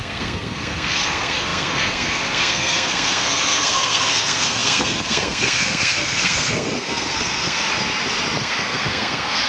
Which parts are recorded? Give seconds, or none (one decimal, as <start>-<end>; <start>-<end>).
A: 7.7-8.4

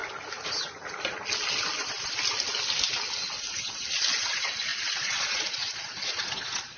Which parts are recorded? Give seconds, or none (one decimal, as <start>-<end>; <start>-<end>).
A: 0.0-4.1

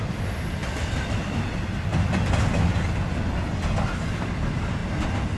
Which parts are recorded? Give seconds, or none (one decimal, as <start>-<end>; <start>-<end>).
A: 0.0-5.4